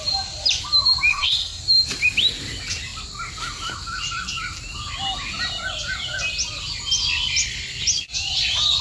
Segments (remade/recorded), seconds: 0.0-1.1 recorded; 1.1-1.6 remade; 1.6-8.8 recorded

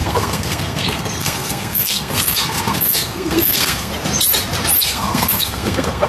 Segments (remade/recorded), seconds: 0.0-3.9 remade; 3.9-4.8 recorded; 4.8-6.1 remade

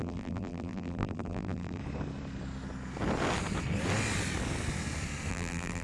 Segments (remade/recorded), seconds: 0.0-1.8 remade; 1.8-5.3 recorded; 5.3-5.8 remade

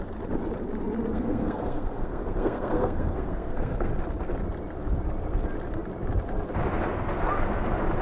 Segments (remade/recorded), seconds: 0.0-1.1 recorded; 1.1-3.9 remade; 3.9-8.0 recorded

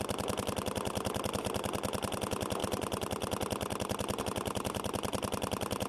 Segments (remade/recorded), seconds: 0.0-5.9 recorded